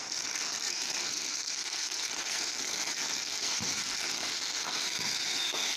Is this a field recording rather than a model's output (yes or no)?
no